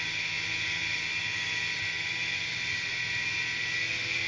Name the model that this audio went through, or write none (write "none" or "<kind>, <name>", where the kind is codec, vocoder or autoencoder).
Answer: none